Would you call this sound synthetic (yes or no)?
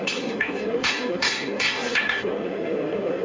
yes